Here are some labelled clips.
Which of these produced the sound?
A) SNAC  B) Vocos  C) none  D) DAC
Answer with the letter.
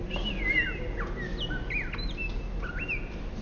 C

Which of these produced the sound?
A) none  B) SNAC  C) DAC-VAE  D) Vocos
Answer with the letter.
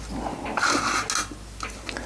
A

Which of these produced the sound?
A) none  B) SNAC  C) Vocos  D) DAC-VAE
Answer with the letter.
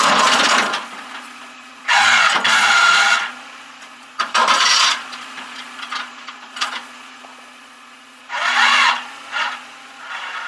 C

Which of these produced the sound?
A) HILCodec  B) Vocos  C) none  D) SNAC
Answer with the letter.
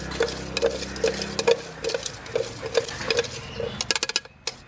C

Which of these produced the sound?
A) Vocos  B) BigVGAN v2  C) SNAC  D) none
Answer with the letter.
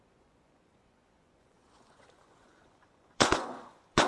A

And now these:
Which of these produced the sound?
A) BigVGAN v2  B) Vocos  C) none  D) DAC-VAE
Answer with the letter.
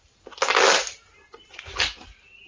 C